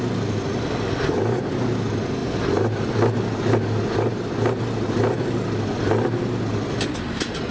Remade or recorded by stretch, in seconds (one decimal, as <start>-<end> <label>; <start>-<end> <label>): 0.0-7.5 recorded